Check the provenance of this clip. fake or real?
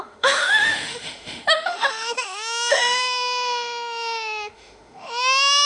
fake